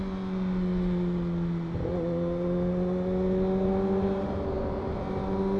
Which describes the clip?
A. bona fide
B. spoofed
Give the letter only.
A